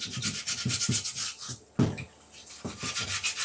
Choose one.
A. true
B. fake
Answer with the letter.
A